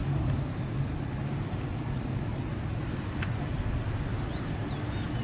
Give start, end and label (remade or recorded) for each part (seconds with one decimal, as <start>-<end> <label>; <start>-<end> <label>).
0.0-5.2 recorded

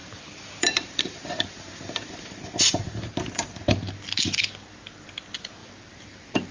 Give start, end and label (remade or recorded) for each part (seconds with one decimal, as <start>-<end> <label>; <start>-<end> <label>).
0.0-3.9 remade; 3.9-5.6 recorded; 5.6-6.5 remade

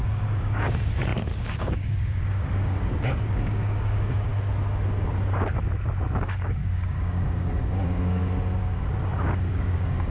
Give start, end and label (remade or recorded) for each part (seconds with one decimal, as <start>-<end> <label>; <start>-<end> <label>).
0.0-4.3 remade; 4.3-6.2 recorded; 6.2-8.2 remade; 8.2-9.5 recorded; 9.5-10.1 remade

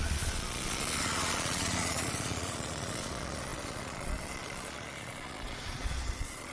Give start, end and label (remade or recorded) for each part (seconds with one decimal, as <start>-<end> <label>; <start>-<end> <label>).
0.0-6.5 remade

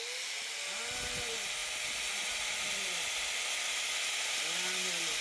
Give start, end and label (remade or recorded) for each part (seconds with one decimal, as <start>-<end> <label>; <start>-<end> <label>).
0.0-5.2 recorded

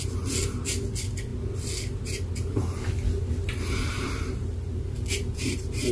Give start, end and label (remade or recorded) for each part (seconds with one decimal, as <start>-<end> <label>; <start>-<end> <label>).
0.0-3.5 recorded; 3.5-5.9 remade

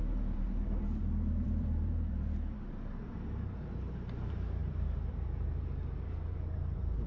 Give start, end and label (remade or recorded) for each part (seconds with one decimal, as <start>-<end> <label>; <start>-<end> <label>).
0.0-7.1 remade

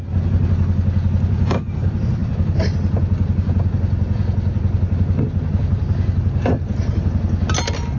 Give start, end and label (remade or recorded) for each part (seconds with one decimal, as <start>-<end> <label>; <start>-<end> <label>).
0.0-8.0 recorded